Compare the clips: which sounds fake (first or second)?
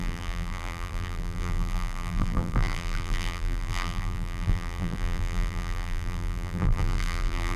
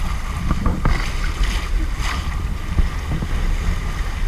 first